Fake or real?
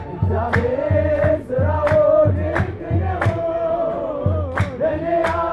real